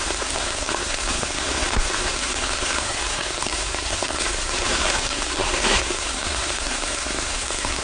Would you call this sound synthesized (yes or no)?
yes